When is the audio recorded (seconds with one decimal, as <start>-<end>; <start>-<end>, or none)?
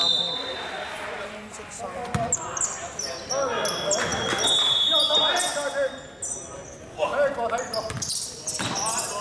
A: 0.0-9.2